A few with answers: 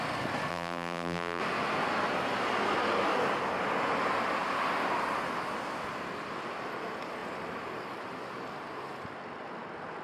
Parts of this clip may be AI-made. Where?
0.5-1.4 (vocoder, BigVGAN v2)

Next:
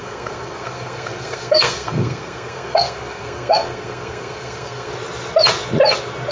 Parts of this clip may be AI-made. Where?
0.0-4.9 (codec, SNAC)

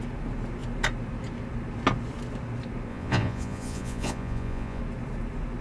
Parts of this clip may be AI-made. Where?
2.9-4.8 (vocoder, Vocos)

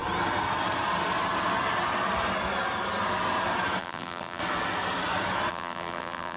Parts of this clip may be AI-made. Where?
3.8-4.4 (vocoder, BigVGAN v2); 5.5-6.4

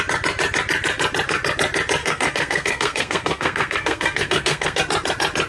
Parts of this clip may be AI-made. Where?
2.0-4.8 (codec, SNAC)

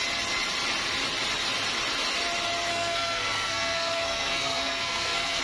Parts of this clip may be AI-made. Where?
2.7-5.4 (codec, SNAC)

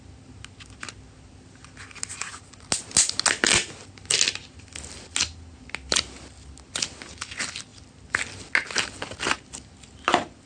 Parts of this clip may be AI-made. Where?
none